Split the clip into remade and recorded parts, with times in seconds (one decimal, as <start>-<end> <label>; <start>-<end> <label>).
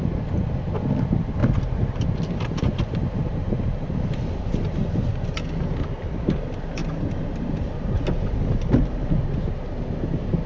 0.0-1.4 recorded; 1.4-3.9 remade; 3.9-6.8 recorded; 6.8-9.1 remade; 9.1-10.5 recorded